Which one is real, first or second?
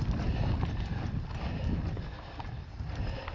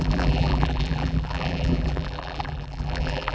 first